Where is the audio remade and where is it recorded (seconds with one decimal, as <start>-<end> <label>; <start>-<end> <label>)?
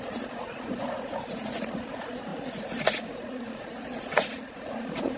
0.0-5.2 remade